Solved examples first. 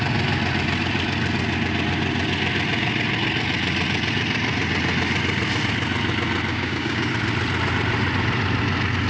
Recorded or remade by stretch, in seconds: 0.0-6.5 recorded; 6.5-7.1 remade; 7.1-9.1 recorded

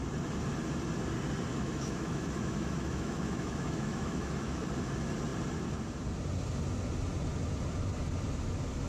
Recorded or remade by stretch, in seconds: 0.0-1.5 recorded; 1.5-4.7 remade; 4.7-8.9 recorded

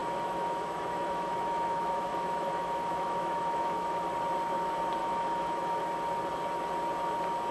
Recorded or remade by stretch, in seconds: 0.0-4.1 remade; 4.1-5.0 recorded; 5.0-5.8 remade; 5.8-7.5 recorded

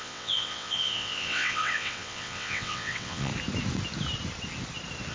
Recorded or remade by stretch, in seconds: 0.0-3.3 remade; 3.3-5.1 recorded

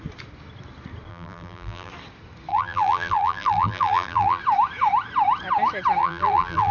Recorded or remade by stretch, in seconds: 0.0-1.1 recorded; 1.1-1.9 remade; 1.9-2.5 recorded; 2.5-4.4 remade; 4.4-6.0 recorded; 6.0-6.7 remade

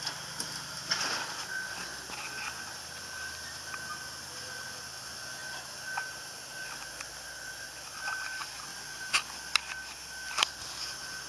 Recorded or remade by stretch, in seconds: 0.0-11.3 recorded